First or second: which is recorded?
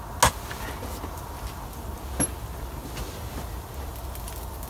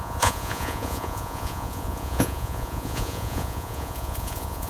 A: first